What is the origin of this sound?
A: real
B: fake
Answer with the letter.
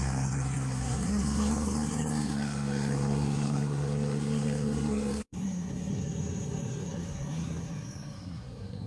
B